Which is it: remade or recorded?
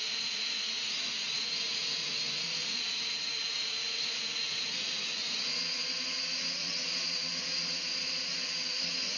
remade